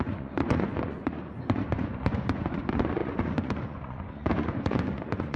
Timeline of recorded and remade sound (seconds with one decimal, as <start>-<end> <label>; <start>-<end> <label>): 0.0-5.4 remade